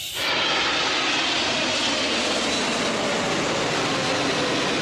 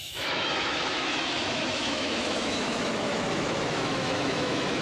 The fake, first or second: second